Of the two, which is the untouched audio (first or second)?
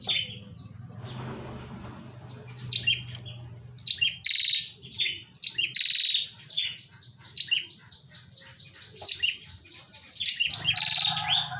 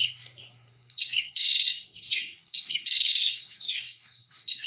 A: first